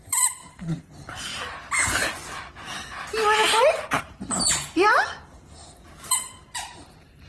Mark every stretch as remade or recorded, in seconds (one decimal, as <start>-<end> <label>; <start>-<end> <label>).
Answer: 0.0-1.3 remade; 1.3-3.6 recorded; 3.6-7.3 remade